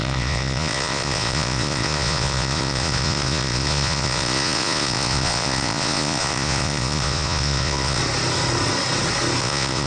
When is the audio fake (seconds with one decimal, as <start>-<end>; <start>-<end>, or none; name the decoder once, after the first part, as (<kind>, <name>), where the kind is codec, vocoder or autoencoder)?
0.0-8.0 (vocoder, Vocos); 9.4-9.9